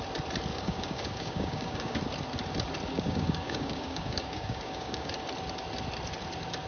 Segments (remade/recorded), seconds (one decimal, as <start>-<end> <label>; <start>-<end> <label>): 0.0-0.5 recorded; 0.5-2.0 remade; 2.0-2.9 recorded; 2.9-5.1 remade; 5.1-6.7 recorded